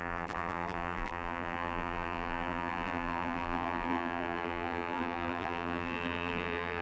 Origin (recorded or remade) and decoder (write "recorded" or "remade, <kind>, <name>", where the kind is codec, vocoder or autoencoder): remade, vocoder, BigVGAN v2